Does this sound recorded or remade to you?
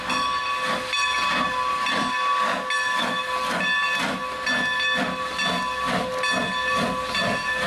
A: recorded